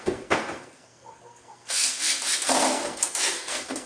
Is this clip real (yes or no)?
no